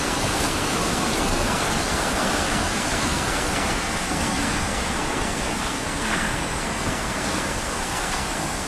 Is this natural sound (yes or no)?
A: no